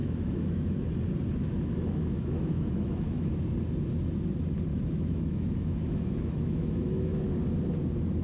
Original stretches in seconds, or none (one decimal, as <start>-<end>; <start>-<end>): 0.9-1.4; 3.3-4.7; 7.3-8.2